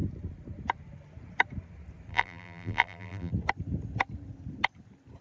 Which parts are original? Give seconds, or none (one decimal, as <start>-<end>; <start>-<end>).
0.0-2.1; 3.3-5.2